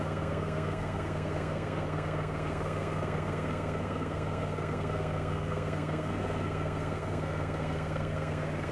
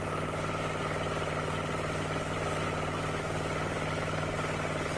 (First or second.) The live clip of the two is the second